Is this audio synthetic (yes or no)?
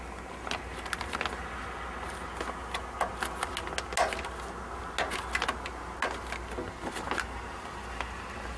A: no